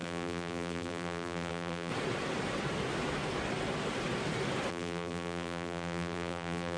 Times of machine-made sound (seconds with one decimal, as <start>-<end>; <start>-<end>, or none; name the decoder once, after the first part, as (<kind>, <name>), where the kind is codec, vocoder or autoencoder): 0.0-1.9 (vocoder, BigVGAN v2); 4.7-6.8